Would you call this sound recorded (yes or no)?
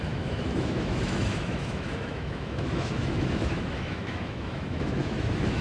no